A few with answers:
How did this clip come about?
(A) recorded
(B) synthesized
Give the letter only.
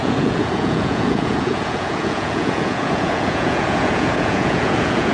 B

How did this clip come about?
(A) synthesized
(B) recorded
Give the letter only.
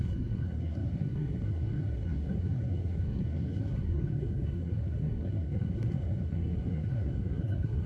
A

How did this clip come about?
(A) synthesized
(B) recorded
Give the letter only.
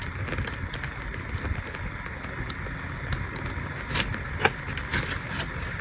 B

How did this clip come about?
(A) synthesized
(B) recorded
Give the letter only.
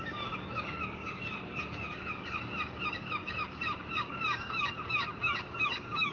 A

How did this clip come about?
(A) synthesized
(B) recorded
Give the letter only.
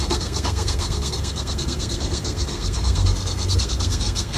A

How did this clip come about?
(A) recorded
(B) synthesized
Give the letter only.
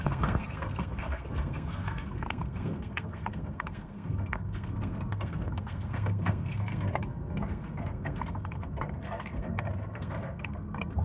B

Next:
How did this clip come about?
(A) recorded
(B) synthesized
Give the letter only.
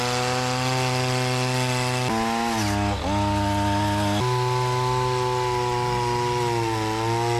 A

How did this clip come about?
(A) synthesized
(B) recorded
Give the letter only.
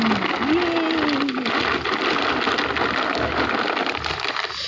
B